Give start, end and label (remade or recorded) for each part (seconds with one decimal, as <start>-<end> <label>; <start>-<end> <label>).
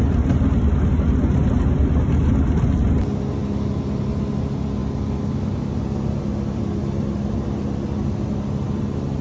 0.0-9.2 recorded